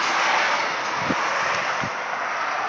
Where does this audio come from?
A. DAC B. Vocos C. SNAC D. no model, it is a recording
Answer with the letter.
D